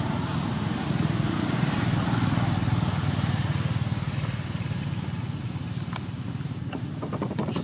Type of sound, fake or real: real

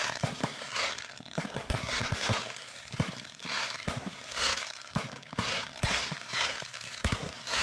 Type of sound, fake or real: fake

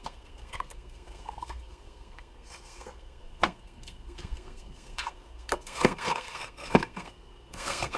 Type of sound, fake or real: fake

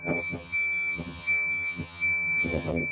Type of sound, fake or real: fake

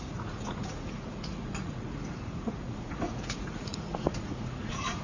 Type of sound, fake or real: fake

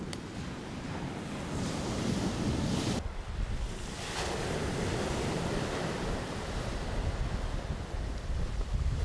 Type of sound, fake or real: real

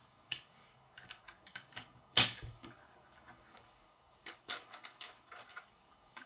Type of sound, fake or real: fake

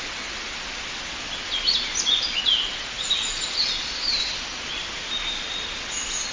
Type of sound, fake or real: real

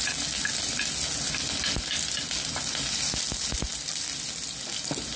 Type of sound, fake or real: real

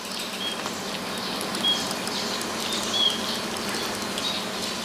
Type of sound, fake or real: real